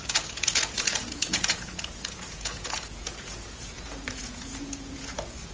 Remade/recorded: remade